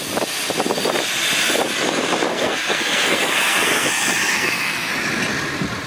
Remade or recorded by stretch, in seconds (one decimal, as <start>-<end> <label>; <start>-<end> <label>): 0.0-2.3 recorded; 2.3-4.9 remade; 4.9-5.9 recorded